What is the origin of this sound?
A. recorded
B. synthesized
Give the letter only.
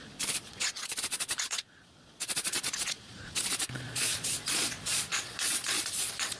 B